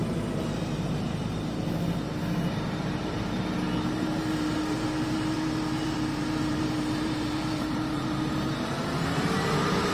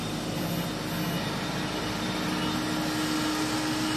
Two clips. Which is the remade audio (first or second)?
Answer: first